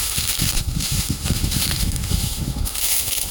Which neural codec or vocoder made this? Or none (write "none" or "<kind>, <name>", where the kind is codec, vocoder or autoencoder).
autoencoder, DAC-VAE